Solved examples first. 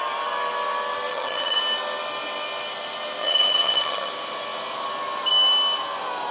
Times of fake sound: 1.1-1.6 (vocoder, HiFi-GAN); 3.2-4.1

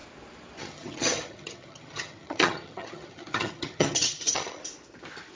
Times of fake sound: 0.6-4.6 (vocoder, HiFi-GAN)

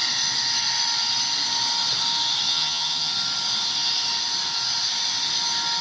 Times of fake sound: 2.5-3.1 (vocoder, HiFi-GAN)

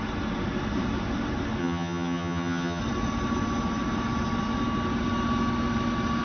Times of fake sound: 1.6-2.8 (vocoder, HiFi-GAN)